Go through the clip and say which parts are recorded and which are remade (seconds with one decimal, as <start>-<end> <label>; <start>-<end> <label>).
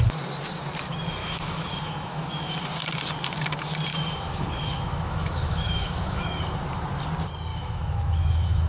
0.0-1.2 recorded; 1.2-2.5 remade; 2.5-3.9 recorded; 3.9-6.4 remade; 6.4-7.5 recorded; 7.5-8.7 remade